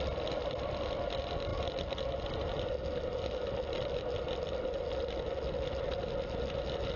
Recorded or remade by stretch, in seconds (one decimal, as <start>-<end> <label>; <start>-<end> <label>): 0.0-7.0 recorded